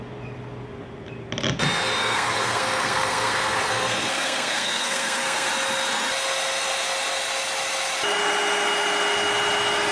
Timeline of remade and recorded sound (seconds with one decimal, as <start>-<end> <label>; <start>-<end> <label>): 0.0-2.0 recorded; 2.0-5.5 remade; 5.5-9.9 recorded

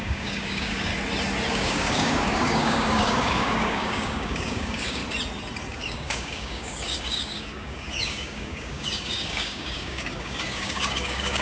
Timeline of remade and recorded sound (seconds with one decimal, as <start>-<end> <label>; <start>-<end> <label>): 0.0-0.9 remade; 0.9-1.5 recorded; 1.5-5.0 remade; 5.0-5.7 recorded; 5.7-11.4 remade

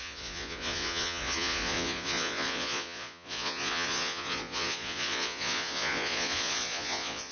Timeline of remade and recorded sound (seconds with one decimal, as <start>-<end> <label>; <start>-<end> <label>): 0.0-7.3 remade